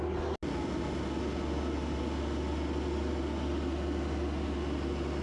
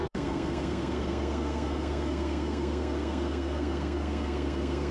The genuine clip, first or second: first